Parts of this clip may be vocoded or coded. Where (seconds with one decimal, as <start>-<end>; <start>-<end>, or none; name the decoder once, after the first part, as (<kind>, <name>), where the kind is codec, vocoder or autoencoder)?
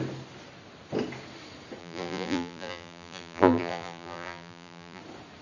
1.8-5.0 (vocoder, BigVGAN v2)